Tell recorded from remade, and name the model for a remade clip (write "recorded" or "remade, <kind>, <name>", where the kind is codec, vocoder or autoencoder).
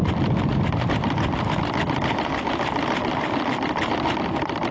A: remade, vocoder, BigVGAN v2